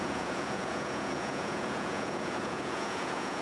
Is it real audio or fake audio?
fake